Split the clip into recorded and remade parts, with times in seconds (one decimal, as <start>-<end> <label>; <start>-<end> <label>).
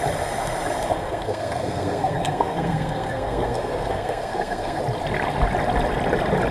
0.0-0.9 recorded; 0.9-4.8 remade; 4.8-6.5 recorded